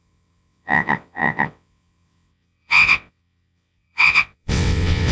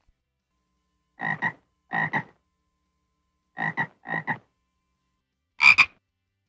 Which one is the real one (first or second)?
second